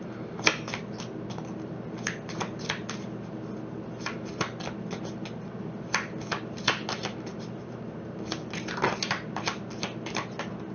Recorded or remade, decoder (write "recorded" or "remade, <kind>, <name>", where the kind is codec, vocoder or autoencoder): recorded